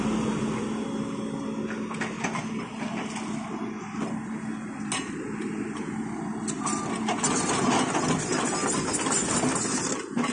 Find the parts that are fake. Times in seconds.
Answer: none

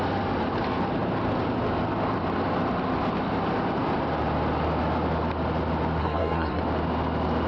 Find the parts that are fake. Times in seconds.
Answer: 6.0-6.6 (codec, SNAC)

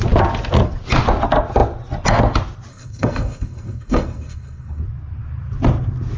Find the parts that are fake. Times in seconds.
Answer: 2.7-4.8 (codec, SNAC)

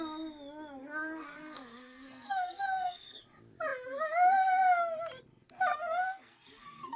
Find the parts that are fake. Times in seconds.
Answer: 0.8-3.2 (codec, SNAC); 5.7-7.0

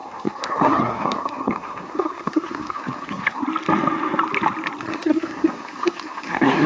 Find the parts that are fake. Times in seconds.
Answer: 0.0-3.4 (codec, SNAC); 4.8-6.7